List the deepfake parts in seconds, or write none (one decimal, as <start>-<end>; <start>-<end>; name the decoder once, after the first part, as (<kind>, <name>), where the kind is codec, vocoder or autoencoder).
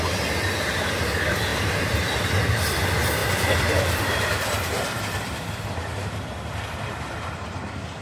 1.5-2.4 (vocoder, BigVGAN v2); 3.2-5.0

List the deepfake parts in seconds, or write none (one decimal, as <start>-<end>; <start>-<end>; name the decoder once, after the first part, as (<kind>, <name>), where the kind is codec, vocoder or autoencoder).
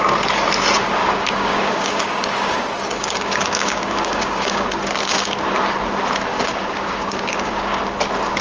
1.0-5.4 (codec, DAC); 6.3-7.8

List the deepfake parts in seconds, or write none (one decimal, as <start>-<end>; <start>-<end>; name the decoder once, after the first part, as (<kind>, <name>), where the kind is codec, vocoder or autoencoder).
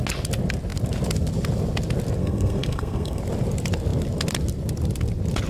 2.2-3.2 (codec, SNAC)